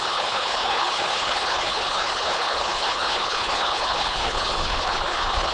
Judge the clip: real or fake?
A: fake